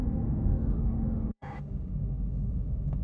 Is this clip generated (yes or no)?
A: yes